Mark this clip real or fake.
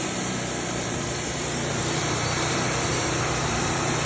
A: fake